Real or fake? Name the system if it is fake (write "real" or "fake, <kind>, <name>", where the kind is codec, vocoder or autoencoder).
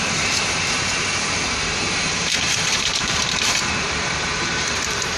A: fake, vocoder, BigVGAN v2